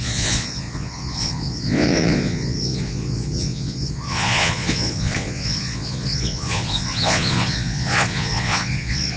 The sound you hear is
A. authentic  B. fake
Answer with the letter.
B